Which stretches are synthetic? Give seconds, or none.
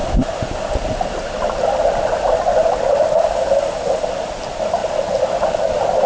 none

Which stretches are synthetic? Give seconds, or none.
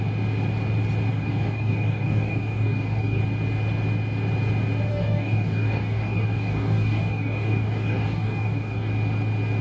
1.1-3.2 (codec, DAC); 4.9-8.9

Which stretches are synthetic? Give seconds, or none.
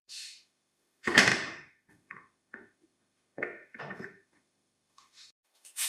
0.0-5.9 (autoencoder, DAC-VAE)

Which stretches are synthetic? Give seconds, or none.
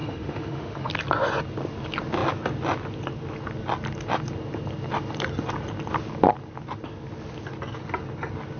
0.0-0.9 (autoencoder, DAC-VAE)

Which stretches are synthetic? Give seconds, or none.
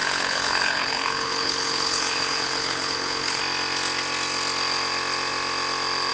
0.0-3.4 (codec, HILCodec)